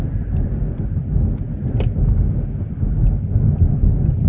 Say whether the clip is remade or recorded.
recorded